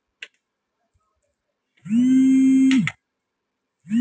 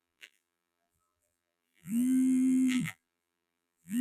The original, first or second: first